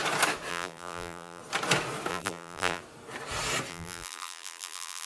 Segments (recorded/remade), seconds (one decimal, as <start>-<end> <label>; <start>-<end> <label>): 0.0-0.5 recorded; 0.5-1.4 remade; 1.4-2.1 recorded; 2.1-2.8 remade; 2.8-3.7 recorded; 3.7-5.1 remade